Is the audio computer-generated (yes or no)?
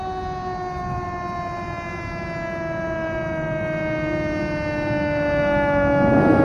no